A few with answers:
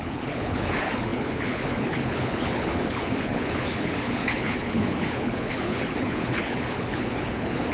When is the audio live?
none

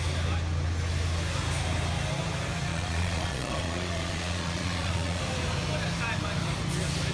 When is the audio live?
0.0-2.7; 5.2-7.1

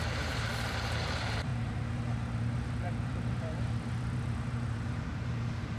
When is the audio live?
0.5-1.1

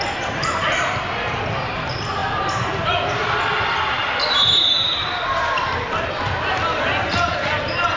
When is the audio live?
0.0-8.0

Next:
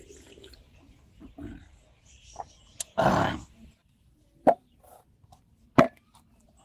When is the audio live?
0.0-3.1; 4.5-6.6